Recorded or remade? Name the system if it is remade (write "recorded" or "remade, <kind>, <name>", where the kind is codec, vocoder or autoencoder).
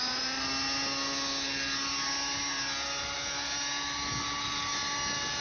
recorded